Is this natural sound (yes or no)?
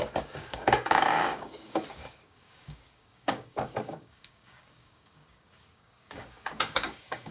no